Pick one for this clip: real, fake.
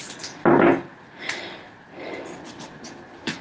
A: real